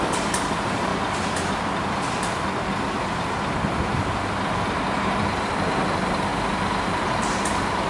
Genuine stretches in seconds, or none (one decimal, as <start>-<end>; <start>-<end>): 0.9-4.7; 6.3-6.9